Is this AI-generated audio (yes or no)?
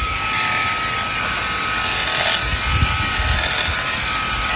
no